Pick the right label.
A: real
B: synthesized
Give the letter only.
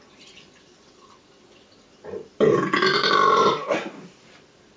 B